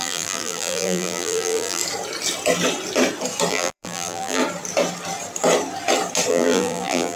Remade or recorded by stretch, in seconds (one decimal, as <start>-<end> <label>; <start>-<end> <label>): 0.0-1.8 remade; 1.8-3.5 recorded; 3.5-4.4 remade; 4.4-6.3 recorded; 6.3-7.2 remade

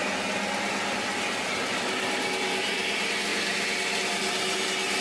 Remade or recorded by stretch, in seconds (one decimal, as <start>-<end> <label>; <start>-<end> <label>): 0.0-5.0 recorded

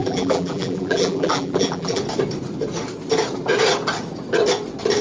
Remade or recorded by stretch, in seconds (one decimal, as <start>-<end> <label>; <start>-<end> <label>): 0.0-2.0 remade; 2.0-5.0 recorded

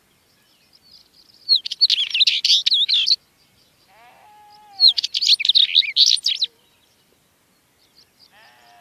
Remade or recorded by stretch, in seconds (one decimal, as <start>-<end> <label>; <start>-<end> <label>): 0.0-8.8 recorded

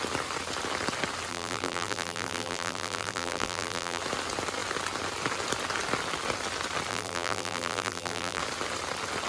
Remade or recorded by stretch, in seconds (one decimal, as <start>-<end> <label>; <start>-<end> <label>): 0.0-1.3 recorded; 1.3-4.0 remade; 4.0-6.9 recorded; 6.9-8.4 remade; 8.4-9.3 recorded

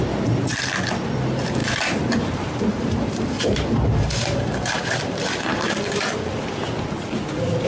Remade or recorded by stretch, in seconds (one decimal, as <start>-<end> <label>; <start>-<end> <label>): 0.0-1.6 recorded; 1.6-6.2 remade; 6.2-7.7 recorded